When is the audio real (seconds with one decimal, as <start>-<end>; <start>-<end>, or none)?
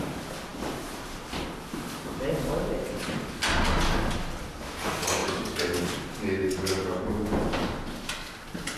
0.0-0.5; 1.3-8.8